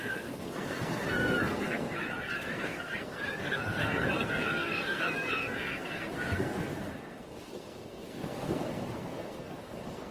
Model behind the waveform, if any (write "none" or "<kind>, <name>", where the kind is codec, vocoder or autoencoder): codec, SNAC